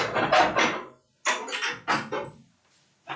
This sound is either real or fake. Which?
real